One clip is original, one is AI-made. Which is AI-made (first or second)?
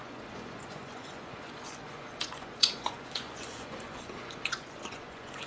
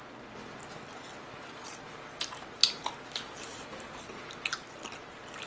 first